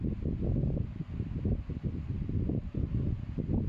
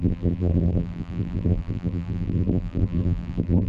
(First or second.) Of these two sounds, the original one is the first